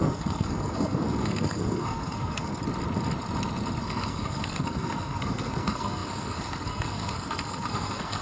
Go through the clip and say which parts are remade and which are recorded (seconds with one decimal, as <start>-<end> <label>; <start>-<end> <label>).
0.0-2.6 remade; 2.6-3.8 recorded; 3.8-8.2 remade